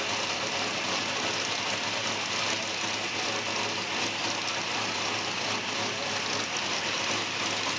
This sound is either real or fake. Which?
real